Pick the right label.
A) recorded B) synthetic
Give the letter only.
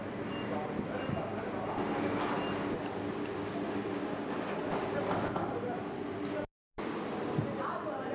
A